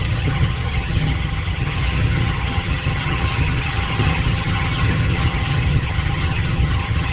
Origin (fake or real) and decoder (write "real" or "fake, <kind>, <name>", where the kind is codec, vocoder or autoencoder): fake, vocoder, HiFi-GAN